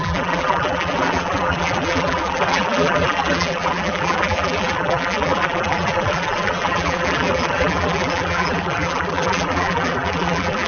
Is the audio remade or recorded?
remade